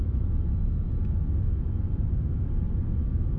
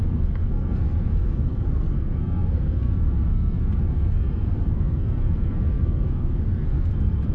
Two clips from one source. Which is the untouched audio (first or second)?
first